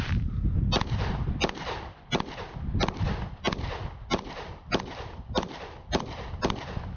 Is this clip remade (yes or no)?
no